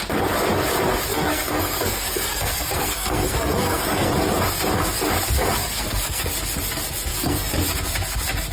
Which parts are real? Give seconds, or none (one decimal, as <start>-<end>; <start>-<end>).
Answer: 0.0-1.1; 4.1-5.6; 6.2-7.1; 7.6-8.5